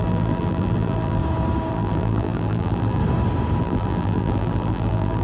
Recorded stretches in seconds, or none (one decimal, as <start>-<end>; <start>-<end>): 1.2-1.7; 3.0-3.6